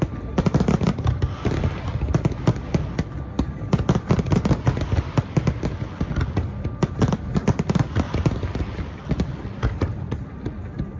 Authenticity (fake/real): real